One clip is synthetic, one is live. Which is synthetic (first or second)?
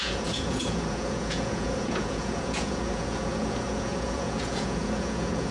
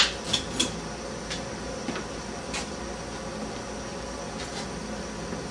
first